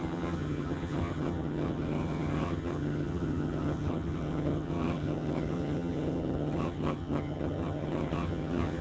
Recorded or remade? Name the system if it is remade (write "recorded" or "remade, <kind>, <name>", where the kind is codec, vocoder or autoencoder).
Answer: remade, vocoder, HiFi-GAN